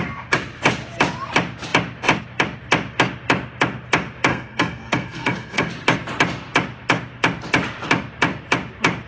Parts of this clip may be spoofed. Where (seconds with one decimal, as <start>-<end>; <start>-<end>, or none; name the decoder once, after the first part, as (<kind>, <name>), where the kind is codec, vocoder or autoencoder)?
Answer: 4.3-5.7 (codec, SNAC)